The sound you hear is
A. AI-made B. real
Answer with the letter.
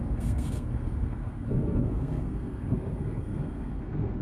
A